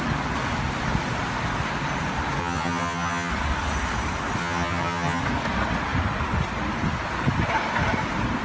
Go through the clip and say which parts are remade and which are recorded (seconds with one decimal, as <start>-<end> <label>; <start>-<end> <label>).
0.0-2.4 recorded; 2.4-3.3 remade; 3.3-4.4 recorded; 4.4-5.2 remade; 5.2-8.4 recorded